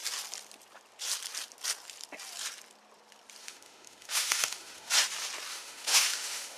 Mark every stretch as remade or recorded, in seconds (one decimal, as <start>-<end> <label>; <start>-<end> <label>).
0.0-3.4 recorded; 3.4-4.9 remade; 4.9-5.5 recorded; 5.5-6.6 remade